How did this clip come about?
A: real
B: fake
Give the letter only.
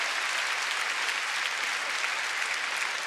A